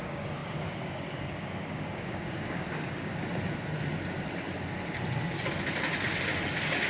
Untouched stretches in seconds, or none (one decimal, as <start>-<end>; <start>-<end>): 3.1-6.9